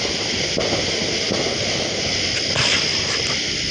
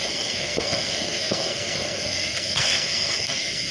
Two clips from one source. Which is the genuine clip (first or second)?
first